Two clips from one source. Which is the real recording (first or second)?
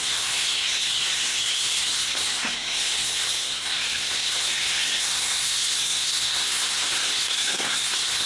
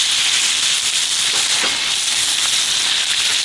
second